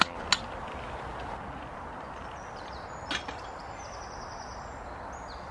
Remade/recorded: recorded